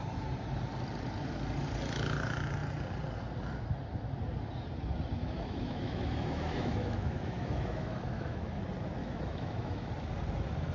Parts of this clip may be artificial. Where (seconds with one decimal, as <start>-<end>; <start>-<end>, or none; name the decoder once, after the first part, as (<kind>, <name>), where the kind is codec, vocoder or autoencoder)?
5.2-8.6 (autoencoder, DAC-VAE); 9.0-9.9